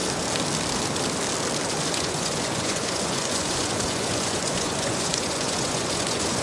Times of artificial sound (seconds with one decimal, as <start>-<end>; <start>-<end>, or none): 1.7-6.4